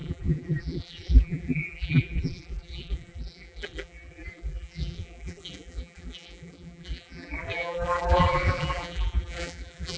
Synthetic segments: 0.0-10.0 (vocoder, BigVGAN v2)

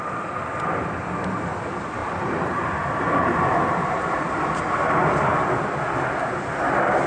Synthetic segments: 2.0-4.3 (vocoder, BigVGAN v2)

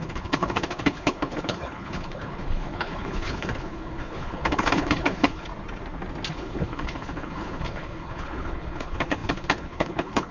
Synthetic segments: 0.0-5.5 (codec, HILCodec); 6.3-10.3

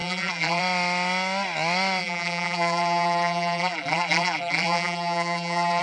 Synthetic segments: 0.0-0.6 (vocoder, BigVGAN v2); 2.0-5.8

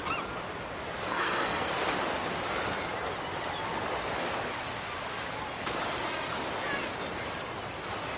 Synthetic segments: 1.1-1.7 (codec, SNAC)

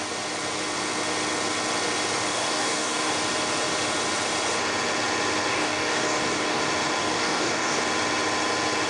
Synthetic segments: 2.3-3.1 (codec, DAC); 5.5-6.6; 7.0-7.8

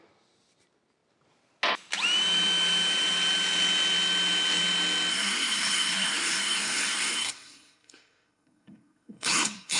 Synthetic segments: 5.1-9.8 (codec, SNAC)

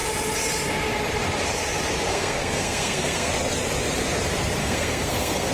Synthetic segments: 2.1-3.3 (codec, SNAC); 4.6-5.5